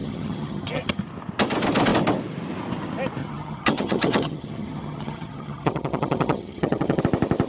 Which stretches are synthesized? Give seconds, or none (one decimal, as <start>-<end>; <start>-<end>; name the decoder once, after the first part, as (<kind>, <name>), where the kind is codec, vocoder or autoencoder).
0.0-1.0 (vocoder, HiFi-GAN); 3.2-7.0